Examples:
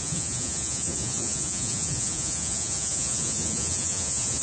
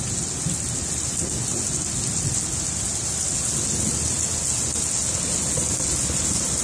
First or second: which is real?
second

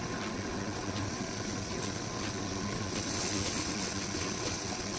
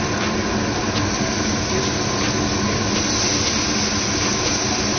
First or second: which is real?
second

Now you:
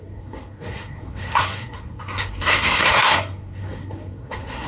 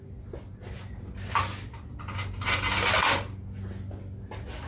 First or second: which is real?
second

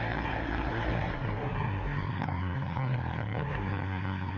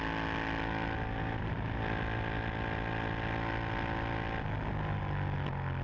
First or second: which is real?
second